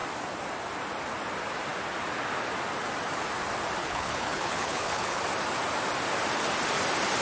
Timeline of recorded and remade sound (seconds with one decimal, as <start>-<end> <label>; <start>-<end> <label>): 0.0-3.8 recorded; 3.8-5.2 remade; 5.2-7.2 recorded